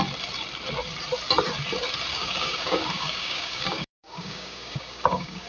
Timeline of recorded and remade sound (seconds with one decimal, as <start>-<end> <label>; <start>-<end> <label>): 0.0-2.1 recorded; 2.1-5.5 remade